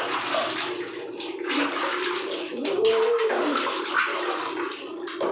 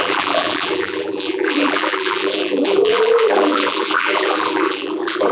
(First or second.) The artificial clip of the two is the second